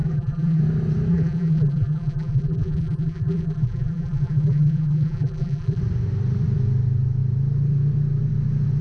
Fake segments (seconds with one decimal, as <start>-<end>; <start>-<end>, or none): 0.0-0.6; 1.1-5.8